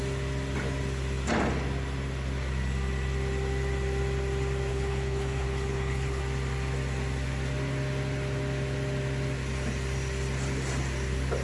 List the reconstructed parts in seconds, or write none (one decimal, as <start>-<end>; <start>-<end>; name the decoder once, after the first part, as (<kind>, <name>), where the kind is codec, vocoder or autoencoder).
4.7-6.2 (codec, HILCodec)